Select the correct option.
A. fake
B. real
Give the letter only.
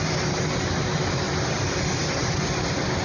B